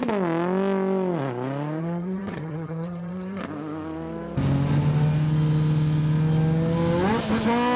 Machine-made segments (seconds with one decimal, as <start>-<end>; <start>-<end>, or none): 1.8-3.4